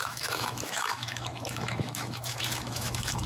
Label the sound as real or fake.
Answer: fake